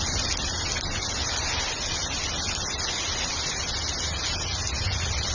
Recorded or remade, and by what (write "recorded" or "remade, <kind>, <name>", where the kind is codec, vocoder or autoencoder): recorded